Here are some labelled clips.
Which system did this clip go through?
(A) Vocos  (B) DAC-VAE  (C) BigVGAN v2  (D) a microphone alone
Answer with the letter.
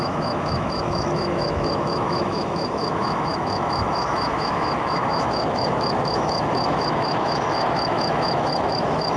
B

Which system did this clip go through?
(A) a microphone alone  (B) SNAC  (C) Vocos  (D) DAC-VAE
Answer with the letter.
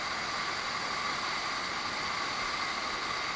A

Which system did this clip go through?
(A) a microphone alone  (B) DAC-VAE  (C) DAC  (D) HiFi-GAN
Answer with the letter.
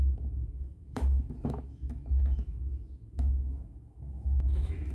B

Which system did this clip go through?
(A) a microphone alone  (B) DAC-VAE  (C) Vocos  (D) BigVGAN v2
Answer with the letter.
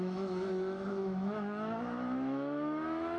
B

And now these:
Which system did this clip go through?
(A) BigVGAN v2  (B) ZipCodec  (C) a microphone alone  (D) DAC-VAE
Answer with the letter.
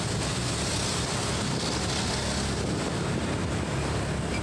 C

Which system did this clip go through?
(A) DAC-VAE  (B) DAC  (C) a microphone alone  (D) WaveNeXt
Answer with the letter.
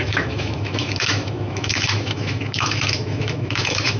A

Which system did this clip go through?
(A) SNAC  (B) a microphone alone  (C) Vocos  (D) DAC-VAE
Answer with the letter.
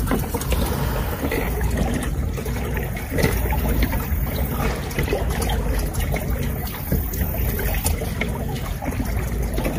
B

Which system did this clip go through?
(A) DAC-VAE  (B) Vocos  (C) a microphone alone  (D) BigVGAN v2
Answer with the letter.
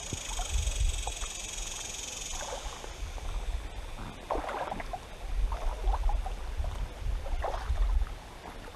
C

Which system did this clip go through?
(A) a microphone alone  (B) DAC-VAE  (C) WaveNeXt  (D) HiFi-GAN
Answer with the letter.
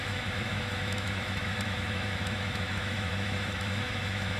B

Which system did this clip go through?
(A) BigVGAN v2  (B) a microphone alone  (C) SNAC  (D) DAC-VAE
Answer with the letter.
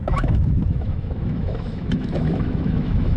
D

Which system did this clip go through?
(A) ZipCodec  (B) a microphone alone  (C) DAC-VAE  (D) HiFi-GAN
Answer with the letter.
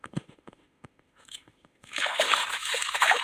C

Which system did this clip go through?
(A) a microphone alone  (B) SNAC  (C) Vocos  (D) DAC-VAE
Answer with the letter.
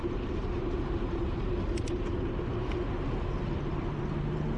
A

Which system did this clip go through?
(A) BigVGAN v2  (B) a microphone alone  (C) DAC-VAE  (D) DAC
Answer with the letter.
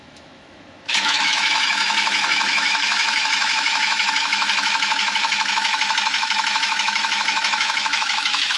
C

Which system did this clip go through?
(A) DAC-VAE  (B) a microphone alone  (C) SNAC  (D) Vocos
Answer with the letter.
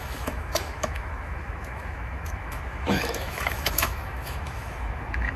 A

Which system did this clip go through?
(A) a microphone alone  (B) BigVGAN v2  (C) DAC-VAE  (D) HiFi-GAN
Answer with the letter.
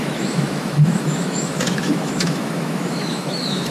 C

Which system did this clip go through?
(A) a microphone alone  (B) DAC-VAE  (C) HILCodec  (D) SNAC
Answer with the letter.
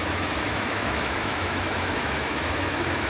B